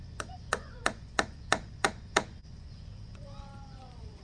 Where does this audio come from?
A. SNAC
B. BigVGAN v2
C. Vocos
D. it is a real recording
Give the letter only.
C